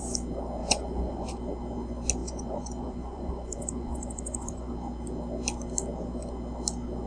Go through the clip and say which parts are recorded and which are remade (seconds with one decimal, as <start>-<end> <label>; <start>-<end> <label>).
0.0-0.6 recorded; 0.6-1.3 remade; 1.3-2.2 recorded; 2.2-4.7 remade; 4.7-7.1 recorded